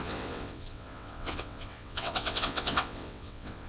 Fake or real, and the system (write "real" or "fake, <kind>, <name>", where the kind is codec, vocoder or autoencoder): fake, vocoder, WaveNeXt